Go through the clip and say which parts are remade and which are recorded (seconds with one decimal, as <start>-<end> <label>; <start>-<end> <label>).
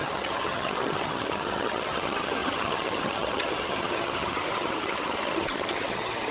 0.0-6.3 remade